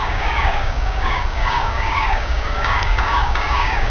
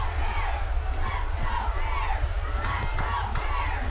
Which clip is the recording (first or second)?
second